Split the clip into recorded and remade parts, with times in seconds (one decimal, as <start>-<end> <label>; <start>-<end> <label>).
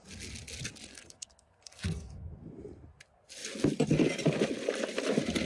0.0-0.9 recorded; 0.9-2.3 remade; 2.3-5.5 recorded